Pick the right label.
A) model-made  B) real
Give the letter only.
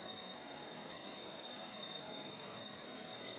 A